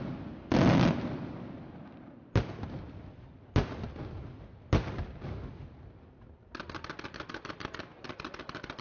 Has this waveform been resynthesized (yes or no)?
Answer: no